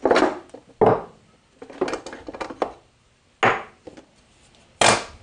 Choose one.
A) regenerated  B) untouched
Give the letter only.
B